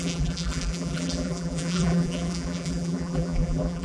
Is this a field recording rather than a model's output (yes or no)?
no